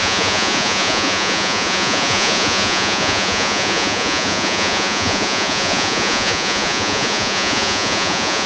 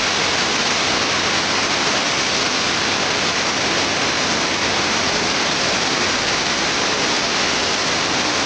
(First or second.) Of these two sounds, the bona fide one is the second